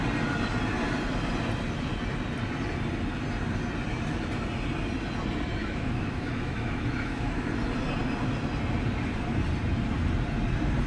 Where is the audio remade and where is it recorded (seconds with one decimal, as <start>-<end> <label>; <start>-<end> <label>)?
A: 0.0-5.6 recorded; 5.6-7.5 remade; 7.5-10.9 recorded